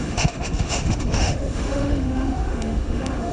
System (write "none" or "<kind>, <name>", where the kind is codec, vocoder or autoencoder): autoencoder, DAC-VAE